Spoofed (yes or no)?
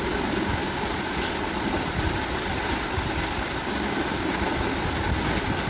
no